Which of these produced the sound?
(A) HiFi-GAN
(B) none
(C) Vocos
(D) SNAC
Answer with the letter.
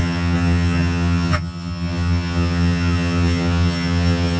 A